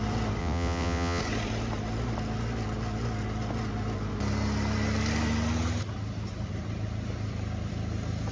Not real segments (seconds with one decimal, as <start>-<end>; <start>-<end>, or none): 0.4-1.2